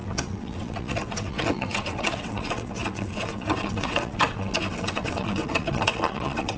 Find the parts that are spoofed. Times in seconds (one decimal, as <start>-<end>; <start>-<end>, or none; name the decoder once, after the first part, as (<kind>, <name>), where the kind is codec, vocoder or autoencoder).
0.0-6.6 (vocoder, WaveNeXt)